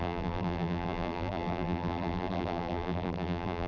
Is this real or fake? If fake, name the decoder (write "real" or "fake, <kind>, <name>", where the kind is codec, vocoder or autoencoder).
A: fake, vocoder, BigVGAN v2